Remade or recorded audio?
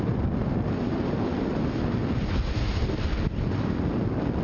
recorded